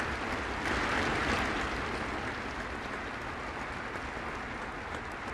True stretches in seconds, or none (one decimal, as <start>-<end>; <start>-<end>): 0.0-5.3